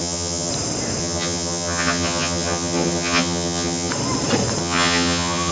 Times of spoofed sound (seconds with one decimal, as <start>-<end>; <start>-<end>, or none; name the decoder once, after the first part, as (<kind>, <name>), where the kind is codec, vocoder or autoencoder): 0.0-0.5 (vocoder, HiFi-GAN); 1.0-3.9; 4.6-5.5